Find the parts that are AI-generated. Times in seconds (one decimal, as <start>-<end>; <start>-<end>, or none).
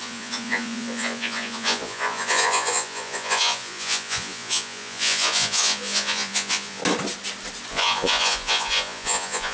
0.0-6.8; 7.7-9.5